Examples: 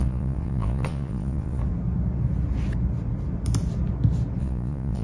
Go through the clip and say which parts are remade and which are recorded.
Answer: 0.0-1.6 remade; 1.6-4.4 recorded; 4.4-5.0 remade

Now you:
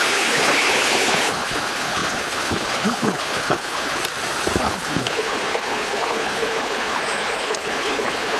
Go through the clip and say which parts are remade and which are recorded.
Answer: 0.0-4.0 remade; 4.0-4.6 recorded; 4.6-8.4 remade

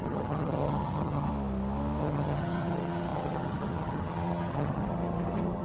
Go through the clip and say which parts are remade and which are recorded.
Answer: 0.0-1.3 remade; 1.3-2.0 recorded; 2.0-5.6 remade

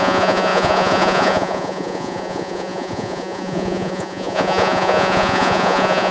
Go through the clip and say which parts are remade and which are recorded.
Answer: 0.0-6.1 remade

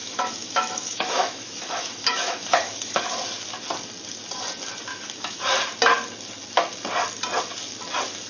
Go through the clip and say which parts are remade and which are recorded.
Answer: 0.0-3.1 remade; 3.1-4.9 recorded; 4.9-5.4 remade; 5.4-8.3 recorded

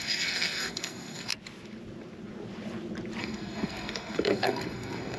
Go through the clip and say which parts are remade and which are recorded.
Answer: 0.0-1.3 remade; 1.3-3.2 recorded; 3.2-5.2 remade